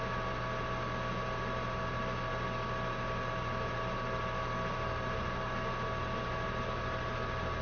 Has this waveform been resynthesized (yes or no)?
no